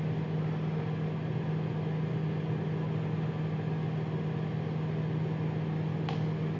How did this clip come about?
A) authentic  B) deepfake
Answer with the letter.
A